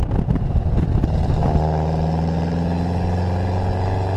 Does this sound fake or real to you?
real